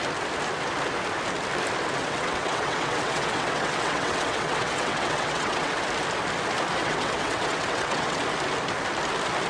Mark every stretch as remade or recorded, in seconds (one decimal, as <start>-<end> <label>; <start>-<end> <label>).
0.0-2.0 recorded; 2.0-5.8 remade; 5.8-6.8 recorded; 6.8-8.2 remade; 8.2-9.5 recorded